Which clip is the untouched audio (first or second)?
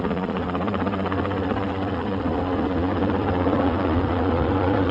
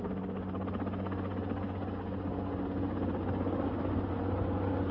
second